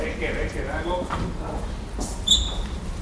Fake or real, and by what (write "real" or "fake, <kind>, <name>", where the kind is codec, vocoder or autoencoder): fake, vocoder, BigVGAN v2